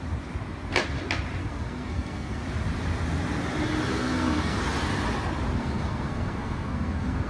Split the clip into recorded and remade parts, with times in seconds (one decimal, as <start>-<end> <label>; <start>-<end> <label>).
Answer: 0.0-1.4 recorded; 1.4-2.4 remade; 2.4-3.9 recorded; 3.9-4.6 remade; 4.6-5.6 recorded; 5.6-7.3 remade